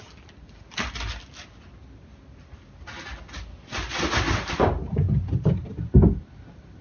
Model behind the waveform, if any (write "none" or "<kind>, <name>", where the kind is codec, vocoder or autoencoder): none